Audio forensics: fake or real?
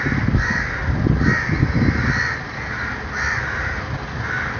real